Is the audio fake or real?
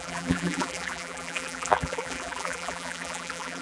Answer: fake